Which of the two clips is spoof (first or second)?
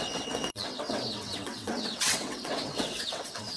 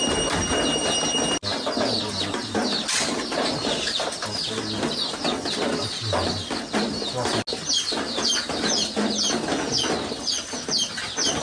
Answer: first